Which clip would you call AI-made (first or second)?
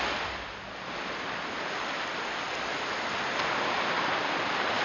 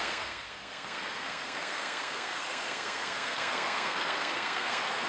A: second